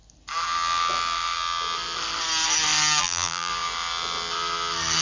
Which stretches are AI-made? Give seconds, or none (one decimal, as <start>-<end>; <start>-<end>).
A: 3.0-3.5